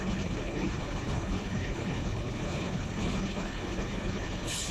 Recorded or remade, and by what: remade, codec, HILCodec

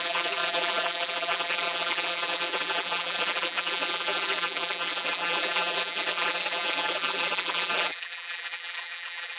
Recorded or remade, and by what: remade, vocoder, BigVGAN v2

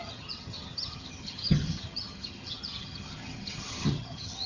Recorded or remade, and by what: remade, vocoder, HiFi-GAN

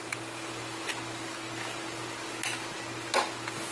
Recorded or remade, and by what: recorded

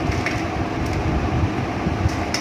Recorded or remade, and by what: recorded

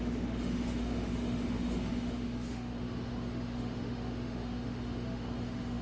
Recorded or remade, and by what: remade, autoencoder, DAC-VAE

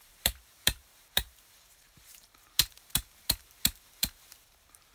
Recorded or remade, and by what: remade, vocoder, BigVGAN v2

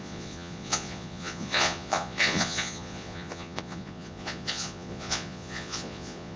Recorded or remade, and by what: remade, vocoder, Vocos